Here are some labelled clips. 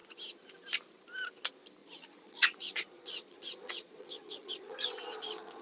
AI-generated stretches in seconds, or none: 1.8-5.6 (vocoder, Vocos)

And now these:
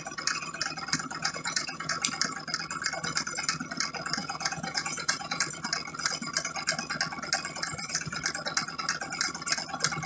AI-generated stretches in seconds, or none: 1.2-2.0 (vocoder, Vocos); 4.2-5.4

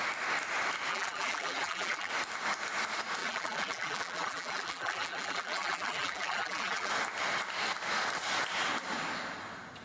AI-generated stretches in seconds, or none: 0.9-2.1 (vocoder, BigVGAN v2); 3.2-6.9